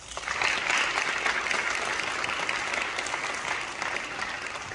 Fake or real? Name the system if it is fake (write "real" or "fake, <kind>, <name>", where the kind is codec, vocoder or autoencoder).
real